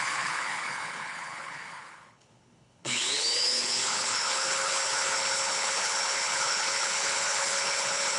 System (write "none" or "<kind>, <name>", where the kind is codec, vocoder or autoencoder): codec, HILCodec